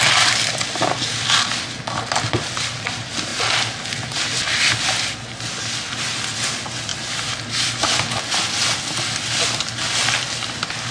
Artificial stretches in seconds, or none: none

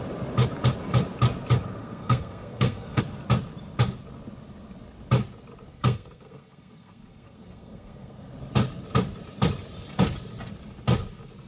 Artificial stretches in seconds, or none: 1.8-3.0; 5.7-8.3

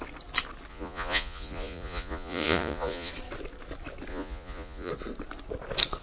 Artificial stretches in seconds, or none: 0.7-3.1; 4.1-4.9

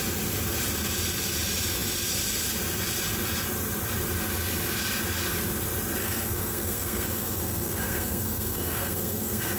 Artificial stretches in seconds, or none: 6.0-9.6

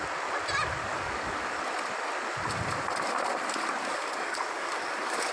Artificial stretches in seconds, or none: 0.8-1.6; 3.8-5.3

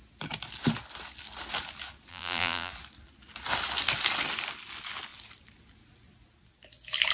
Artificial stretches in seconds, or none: 2.1-2.7

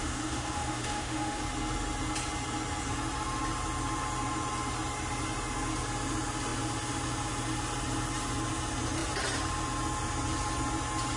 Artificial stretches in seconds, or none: 0.0-1.4

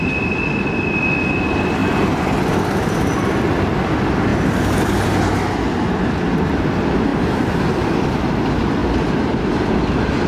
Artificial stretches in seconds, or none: 7.1-7.6